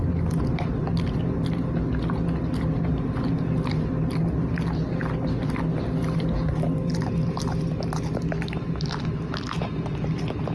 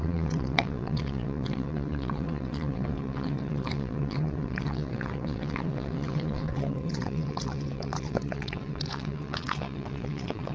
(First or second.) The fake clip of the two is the second